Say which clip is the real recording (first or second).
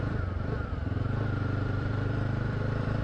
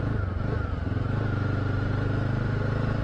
second